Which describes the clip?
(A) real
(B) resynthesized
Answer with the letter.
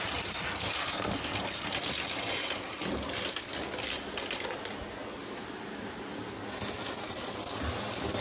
A